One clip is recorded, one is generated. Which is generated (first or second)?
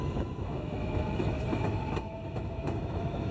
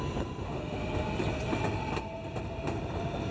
first